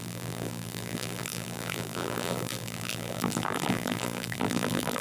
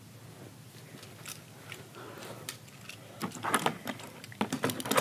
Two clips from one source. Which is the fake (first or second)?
first